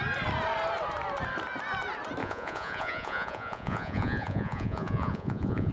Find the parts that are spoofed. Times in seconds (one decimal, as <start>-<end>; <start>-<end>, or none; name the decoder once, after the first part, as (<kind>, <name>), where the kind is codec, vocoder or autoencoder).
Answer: 2.2-5.7 (vocoder, Vocos)

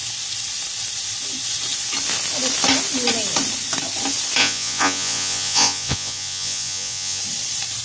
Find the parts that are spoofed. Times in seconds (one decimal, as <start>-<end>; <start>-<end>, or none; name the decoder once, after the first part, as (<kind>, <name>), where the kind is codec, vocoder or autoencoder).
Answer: 4.4-7.2 (vocoder, Vocos)

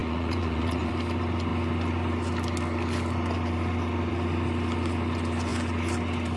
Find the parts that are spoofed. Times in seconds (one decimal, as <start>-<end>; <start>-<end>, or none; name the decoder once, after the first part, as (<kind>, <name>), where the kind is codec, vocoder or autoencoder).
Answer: 0.0-0.9 (vocoder, Vocos)

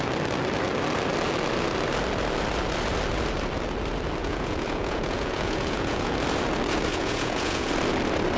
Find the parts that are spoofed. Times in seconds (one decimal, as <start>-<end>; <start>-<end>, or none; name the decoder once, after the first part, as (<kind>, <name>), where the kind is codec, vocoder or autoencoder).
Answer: 4.2-6.1 (vocoder, Vocos); 6.9-7.7

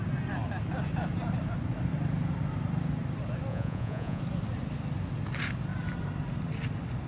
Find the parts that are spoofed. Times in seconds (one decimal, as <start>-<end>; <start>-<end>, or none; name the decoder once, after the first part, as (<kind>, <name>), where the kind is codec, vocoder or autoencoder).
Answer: 3.5-4.2 (vocoder, Vocos)